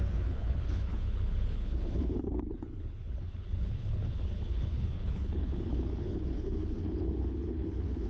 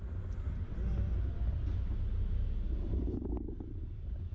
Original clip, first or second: second